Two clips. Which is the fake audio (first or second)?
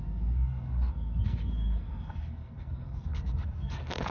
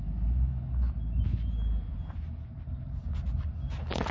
first